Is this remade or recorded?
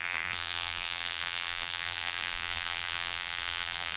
remade